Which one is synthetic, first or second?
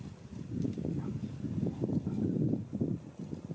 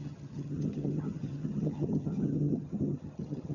second